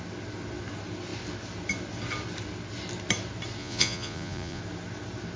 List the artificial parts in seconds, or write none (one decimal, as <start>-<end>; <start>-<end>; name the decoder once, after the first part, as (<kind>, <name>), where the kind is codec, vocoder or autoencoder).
3.6-4.6 (vocoder, Vocos)